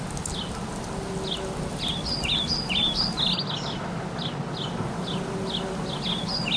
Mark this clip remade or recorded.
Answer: recorded